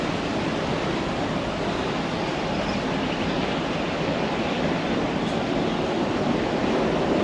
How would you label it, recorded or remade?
recorded